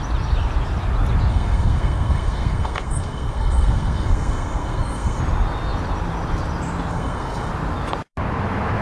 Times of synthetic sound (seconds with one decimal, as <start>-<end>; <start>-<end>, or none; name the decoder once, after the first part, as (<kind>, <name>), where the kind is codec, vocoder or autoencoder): 1.3-5.2 (codec, SNAC); 6.9-7.5